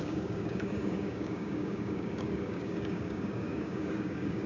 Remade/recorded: remade